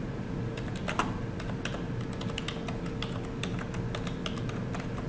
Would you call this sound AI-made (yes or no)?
no